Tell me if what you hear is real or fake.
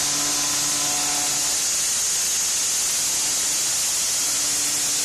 real